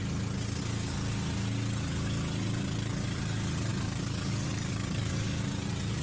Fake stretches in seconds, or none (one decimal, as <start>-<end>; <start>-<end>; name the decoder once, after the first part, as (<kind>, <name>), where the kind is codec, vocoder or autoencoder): 3.7-5.4 (codec, DAC)